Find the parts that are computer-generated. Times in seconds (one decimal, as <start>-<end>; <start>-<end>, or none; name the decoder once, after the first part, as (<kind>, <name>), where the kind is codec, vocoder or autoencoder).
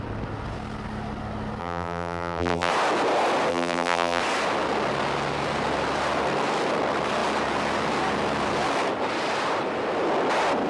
1.6-2.7 (vocoder, BigVGAN v2); 3.5-4.2